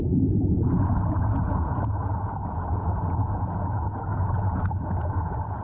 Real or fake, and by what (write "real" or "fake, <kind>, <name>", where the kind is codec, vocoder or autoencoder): fake, vocoder, Vocos